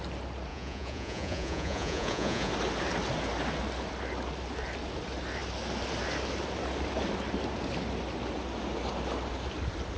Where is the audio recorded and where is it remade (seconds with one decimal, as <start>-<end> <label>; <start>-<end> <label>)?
0.0-0.5 recorded; 0.5-2.5 remade; 2.5-10.0 recorded